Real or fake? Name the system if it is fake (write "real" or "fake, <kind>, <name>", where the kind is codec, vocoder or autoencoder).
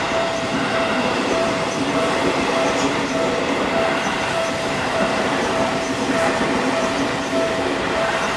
fake, vocoder, BigVGAN v2